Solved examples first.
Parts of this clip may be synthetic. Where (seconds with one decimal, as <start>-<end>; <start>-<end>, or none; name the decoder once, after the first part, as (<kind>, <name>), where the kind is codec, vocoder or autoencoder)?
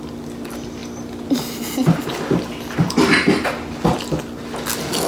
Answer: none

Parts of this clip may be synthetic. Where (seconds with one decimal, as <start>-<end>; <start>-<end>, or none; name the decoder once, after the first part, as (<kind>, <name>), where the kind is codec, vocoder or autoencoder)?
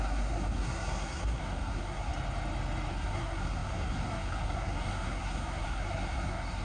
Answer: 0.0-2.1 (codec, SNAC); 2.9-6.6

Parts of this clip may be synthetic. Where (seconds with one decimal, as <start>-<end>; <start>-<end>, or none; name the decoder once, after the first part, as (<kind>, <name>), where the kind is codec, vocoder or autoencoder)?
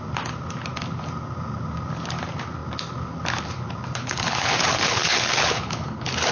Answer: 4.0-6.3 (codec, HILCodec)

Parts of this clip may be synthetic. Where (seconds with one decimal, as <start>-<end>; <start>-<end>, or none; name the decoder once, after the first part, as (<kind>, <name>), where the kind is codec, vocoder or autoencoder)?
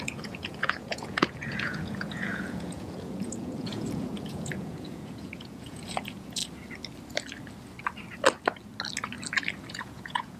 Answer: 0.0-6.4 (vocoder, Vocos); 9.7-10.4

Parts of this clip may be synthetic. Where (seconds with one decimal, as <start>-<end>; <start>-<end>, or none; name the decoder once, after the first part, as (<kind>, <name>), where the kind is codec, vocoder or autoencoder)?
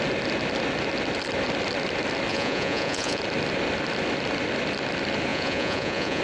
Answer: 2.3-3.2 (vocoder, Vocos); 5.3-6.2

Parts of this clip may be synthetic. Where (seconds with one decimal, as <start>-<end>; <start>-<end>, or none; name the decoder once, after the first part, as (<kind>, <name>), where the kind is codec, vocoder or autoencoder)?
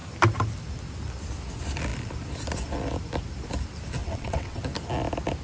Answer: 4.0-4.6 (vocoder, WaveNeXt)